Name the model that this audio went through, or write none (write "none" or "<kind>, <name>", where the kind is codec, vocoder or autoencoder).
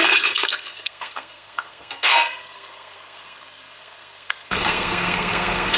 codec, SNAC